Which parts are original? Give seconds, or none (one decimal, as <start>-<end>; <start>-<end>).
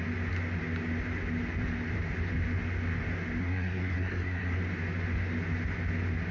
0.0-3.4; 4.6-6.3